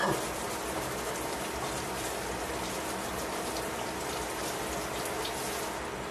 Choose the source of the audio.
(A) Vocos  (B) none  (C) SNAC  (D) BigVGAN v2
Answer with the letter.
B